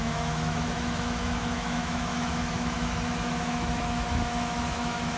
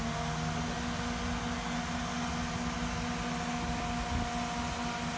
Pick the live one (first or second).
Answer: second